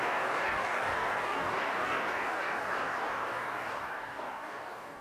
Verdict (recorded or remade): remade